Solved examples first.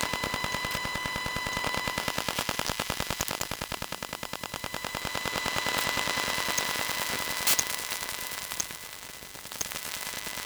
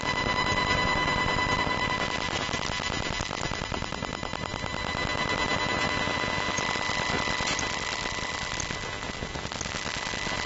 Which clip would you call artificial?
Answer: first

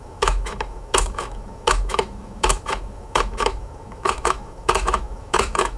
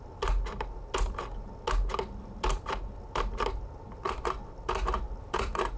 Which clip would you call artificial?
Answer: first